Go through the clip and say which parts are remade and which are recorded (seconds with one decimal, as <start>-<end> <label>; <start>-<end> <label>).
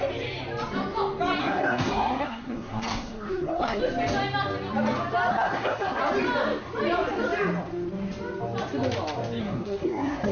0.0-1.4 recorded; 1.4-3.8 remade; 3.8-5.3 recorded; 5.3-6.0 remade; 6.0-9.4 recorded; 9.4-10.3 remade